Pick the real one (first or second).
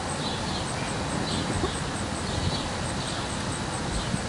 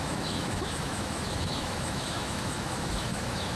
first